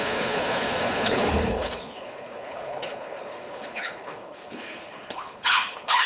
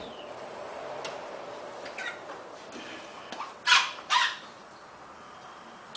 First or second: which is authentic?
second